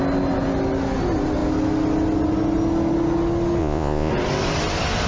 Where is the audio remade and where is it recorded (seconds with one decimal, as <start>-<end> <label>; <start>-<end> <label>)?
0.0-3.6 recorded; 3.6-4.1 remade; 4.1-5.1 recorded

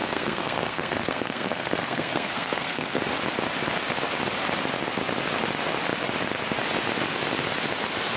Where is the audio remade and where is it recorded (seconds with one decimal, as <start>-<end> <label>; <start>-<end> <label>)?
0.0-3.0 remade; 3.0-8.2 recorded